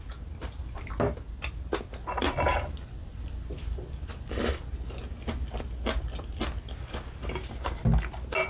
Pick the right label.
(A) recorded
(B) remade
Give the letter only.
A